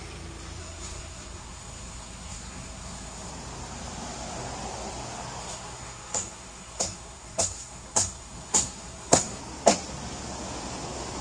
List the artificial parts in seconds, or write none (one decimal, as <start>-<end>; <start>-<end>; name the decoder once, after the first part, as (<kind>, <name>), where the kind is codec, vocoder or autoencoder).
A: 0.6-3.3 (codec, SNAC); 5.4-9.4